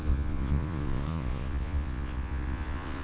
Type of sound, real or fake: fake